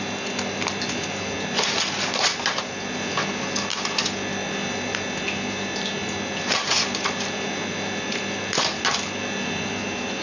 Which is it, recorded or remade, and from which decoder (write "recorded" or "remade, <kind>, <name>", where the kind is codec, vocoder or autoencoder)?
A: recorded